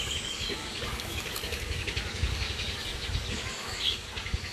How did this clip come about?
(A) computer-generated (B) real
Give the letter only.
A